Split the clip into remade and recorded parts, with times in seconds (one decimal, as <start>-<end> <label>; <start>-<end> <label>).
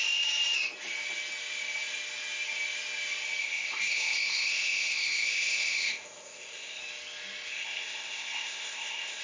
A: 0.0-3.4 recorded; 3.4-6.8 remade; 6.8-7.5 recorded; 7.5-9.2 remade